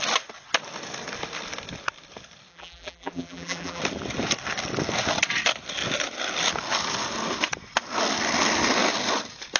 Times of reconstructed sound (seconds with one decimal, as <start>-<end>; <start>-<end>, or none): 2.5-3.8